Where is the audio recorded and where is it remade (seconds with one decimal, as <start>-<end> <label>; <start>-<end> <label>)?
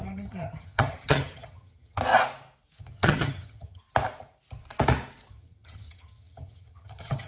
0.0-2.0 remade; 2.0-2.8 recorded; 2.8-3.8 remade; 3.8-5.3 recorded; 5.3-7.3 remade